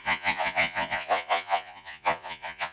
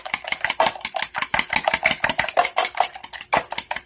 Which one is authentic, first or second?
second